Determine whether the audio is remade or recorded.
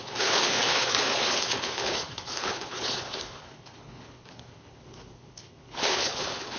remade